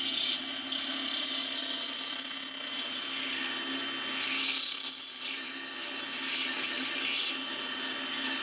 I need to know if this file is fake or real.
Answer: real